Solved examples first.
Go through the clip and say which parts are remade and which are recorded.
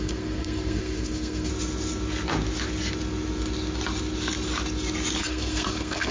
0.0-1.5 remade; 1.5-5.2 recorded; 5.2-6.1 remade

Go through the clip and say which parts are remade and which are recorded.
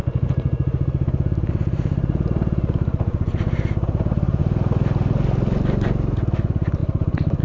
0.0-4.4 remade; 4.4-6.8 recorded; 6.8-7.4 remade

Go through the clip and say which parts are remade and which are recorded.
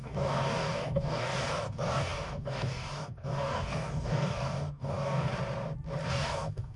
0.0-5.3 remade; 5.3-6.1 recorded; 6.1-6.8 remade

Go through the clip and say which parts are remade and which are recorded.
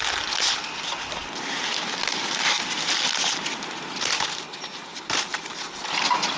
0.0-6.4 recorded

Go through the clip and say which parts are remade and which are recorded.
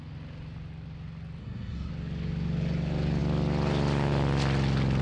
0.0-1.4 recorded; 1.4-1.9 remade; 1.9-5.0 recorded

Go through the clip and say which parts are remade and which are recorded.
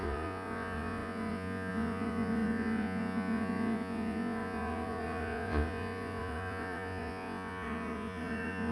0.0-8.7 remade